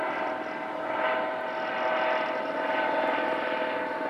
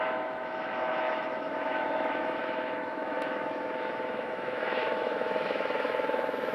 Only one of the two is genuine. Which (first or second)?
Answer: first